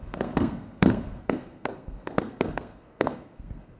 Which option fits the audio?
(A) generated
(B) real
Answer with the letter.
A